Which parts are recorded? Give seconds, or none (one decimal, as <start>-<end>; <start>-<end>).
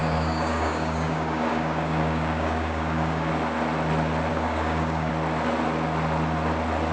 3.3-4.3; 5.1-6.9